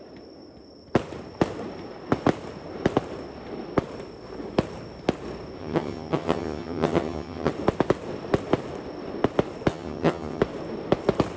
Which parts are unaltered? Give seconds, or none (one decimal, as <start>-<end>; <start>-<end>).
0.0-5.6; 7.5-9.7; 10.4-11.4

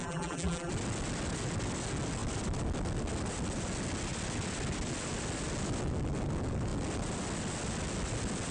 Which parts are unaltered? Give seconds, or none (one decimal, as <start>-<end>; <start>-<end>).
0.7-8.5

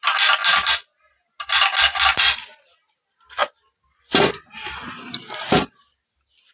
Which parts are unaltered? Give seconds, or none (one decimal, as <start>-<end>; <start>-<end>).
0.0-6.5

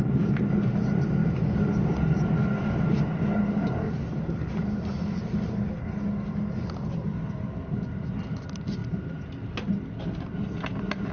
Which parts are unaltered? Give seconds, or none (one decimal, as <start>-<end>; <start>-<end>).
0.0-11.1

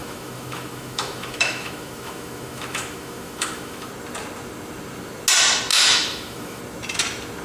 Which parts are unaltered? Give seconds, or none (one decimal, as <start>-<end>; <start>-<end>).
3.9-5.7; 6.6-7.4

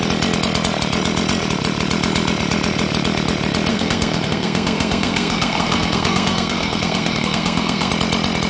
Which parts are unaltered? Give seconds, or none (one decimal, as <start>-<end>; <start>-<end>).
0.0-3.7; 7.9-8.5